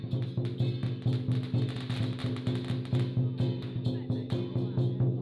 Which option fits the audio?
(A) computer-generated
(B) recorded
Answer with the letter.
B